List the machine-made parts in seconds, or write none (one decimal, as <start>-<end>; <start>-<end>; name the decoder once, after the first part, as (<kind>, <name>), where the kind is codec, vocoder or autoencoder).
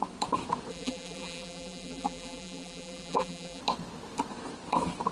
0.7-3.6 (vocoder, BigVGAN v2)